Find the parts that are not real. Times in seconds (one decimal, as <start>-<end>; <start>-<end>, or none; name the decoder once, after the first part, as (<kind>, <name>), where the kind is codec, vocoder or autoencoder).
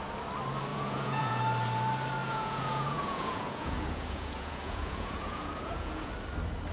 0.7-1.4 (vocoder, Vocos); 2.2-6.1